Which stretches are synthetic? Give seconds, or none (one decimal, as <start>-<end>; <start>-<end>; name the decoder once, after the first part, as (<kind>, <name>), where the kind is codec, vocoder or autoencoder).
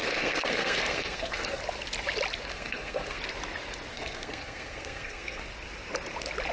0.0-1.6 (codec, SNAC); 2.5-3.2; 3.9-5.4